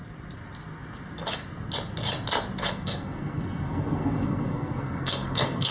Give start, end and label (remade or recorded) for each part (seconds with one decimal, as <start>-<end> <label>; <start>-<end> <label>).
0.0-2.7 recorded; 2.7-5.7 remade